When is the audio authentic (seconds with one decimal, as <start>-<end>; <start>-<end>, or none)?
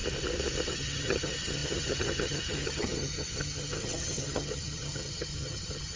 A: 0.0-0.7